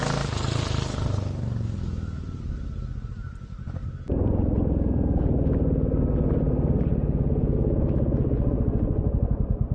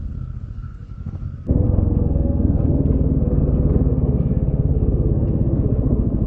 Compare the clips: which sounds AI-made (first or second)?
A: second